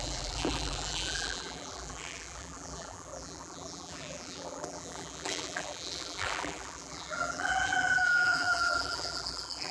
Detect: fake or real fake